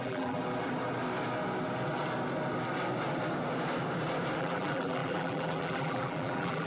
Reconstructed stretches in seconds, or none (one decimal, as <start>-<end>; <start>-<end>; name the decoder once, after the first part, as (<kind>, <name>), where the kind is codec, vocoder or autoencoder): 0.0-0.4 (vocoder, BigVGAN v2); 4.4-6.7